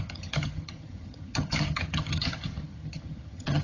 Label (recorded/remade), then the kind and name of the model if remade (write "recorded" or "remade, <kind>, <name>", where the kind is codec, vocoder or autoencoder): remade, vocoder, HiFi-GAN